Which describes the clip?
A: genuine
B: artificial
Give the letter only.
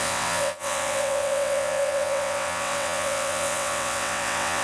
B